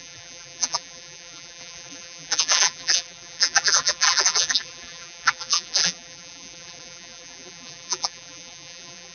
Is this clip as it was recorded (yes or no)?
no